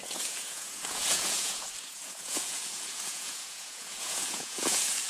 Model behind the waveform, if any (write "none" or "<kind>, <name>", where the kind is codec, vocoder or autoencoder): vocoder, Vocos